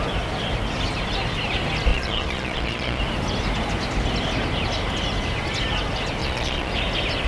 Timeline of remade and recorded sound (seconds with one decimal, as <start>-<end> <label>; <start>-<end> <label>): 0.0-1.9 recorded; 1.9-3.0 remade; 3.0-6.2 recorded; 6.2-6.7 remade; 6.7-7.3 recorded